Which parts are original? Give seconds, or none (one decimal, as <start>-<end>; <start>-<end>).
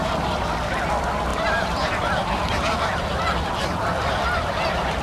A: 0.0-1.3; 3.1-5.0